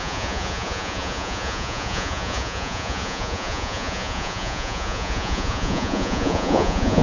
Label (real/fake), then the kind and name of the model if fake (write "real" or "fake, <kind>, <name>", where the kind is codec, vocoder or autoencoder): fake, vocoder, Vocos